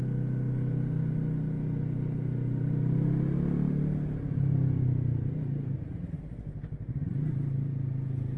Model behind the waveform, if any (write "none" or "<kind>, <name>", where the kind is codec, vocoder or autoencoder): none